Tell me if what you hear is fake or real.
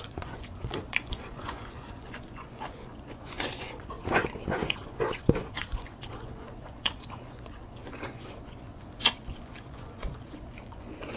fake